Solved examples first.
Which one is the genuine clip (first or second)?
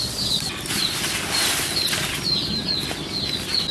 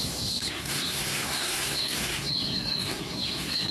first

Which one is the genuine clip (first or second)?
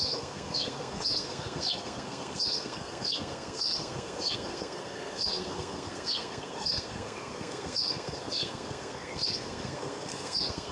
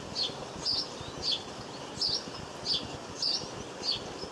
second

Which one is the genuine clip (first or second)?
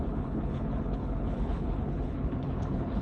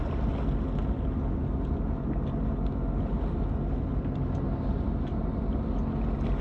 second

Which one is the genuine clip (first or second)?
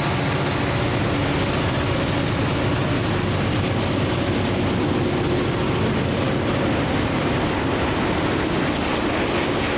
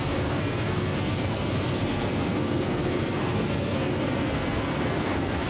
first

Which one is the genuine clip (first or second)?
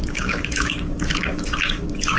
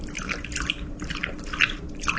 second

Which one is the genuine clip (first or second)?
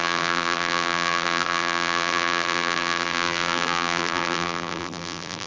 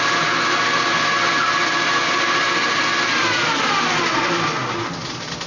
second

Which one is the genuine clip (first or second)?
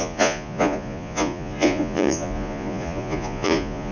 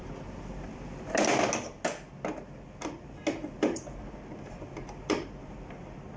second